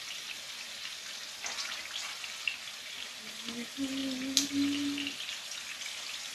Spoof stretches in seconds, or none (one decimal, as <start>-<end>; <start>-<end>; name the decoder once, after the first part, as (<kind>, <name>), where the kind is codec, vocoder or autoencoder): none